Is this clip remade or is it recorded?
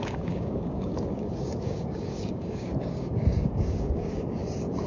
remade